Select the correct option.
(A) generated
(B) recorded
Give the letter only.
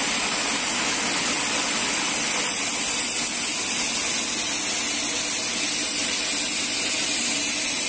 B